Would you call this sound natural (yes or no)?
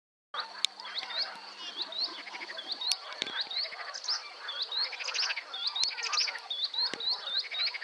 yes